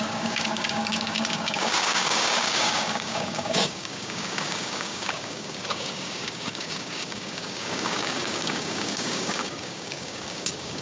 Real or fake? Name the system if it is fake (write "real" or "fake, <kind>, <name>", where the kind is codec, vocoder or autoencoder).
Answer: fake, codec, DAC